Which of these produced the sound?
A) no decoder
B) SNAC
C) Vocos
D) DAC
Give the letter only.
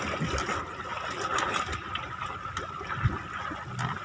A